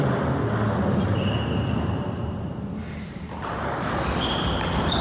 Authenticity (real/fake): real